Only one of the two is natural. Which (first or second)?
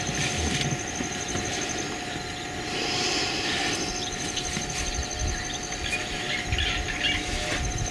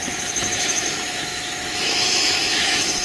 first